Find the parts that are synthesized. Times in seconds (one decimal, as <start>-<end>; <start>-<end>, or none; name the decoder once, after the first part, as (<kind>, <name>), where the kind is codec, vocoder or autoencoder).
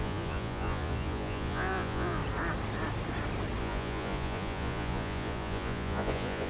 0.0-2.2 (vocoder, Vocos); 3.6-6.5